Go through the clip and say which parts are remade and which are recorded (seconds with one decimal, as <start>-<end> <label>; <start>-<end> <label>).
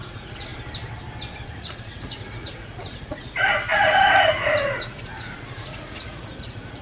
0.0-0.5 remade; 0.5-1.6 recorded; 1.6-6.8 remade